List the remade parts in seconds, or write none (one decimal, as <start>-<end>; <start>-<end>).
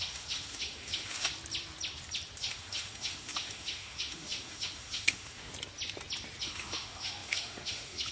0.0-1.3; 2.4-5.5; 6.4-8.1